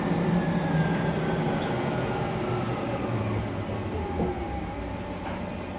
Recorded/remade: recorded